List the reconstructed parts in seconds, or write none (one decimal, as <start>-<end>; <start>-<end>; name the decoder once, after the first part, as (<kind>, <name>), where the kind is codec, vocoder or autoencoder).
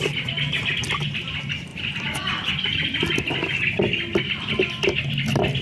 none